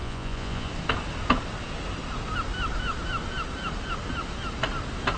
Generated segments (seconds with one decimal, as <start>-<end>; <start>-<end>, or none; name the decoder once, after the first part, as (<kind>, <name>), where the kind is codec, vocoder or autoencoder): 0.0-0.7 (vocoder, Vocos)